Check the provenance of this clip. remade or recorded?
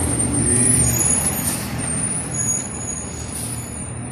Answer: remade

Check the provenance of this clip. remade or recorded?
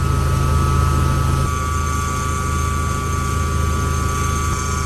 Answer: recorded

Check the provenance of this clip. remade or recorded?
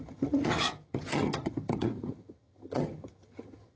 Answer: remade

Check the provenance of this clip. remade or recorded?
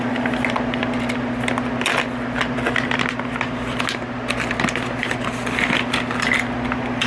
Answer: recorded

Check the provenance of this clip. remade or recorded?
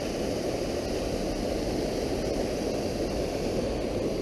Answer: recorded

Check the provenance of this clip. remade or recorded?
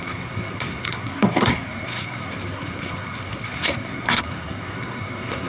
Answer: remade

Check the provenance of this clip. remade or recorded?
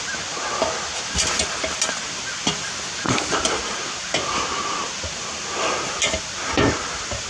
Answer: recorded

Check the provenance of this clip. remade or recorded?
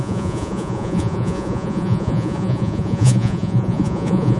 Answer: remade